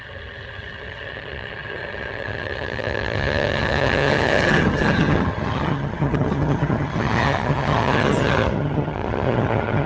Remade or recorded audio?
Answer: remade